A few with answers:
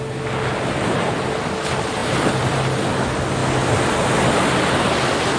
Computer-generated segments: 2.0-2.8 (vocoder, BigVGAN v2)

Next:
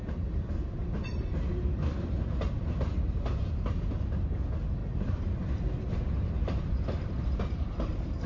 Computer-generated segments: none

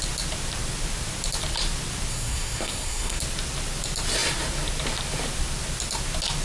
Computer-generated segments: 2.1-3.2 (codec, SNAC)

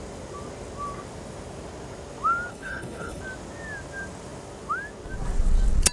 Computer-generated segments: 2.5-3.2 (codec, HILCodec)

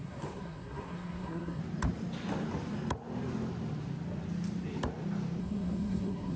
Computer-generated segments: 0.0-1.6 (codec, SNAC); 5.4-6.4